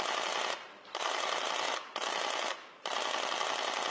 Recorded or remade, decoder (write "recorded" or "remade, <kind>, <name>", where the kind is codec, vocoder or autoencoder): recorded